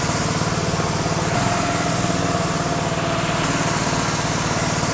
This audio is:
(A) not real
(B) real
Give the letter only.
B